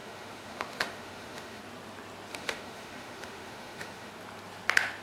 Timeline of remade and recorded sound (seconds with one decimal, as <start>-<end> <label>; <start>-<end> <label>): 0.0-1.6 remade; 1.6-2.3 recorded; 2.3-4.1 remade; 4.1-5.0 recorded

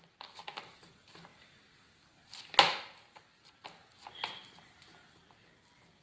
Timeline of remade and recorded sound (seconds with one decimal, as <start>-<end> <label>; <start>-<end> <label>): 0.0-6.0 recorded